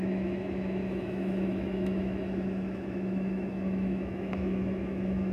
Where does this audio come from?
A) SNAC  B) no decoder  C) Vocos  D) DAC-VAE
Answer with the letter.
D